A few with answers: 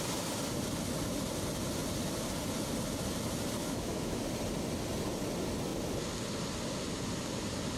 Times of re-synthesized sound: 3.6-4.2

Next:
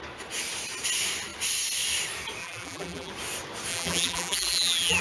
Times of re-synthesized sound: 2.4-3.1; 3.7-5.0

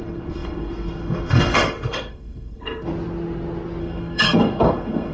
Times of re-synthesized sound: 0.0-2.9; 3.8-5.1

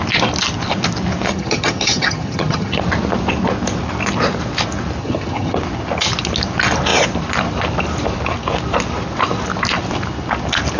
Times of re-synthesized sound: 1.3-2.8; 5.0-5.6